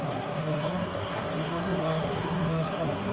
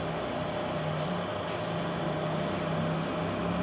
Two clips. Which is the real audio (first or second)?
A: second